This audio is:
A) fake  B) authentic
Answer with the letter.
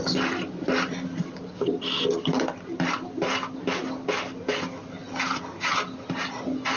B